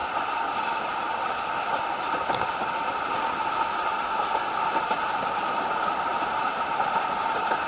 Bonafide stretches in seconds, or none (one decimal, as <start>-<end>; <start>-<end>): 0.0-6.1; 6.7-7.7